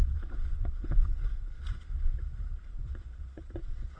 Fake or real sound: fake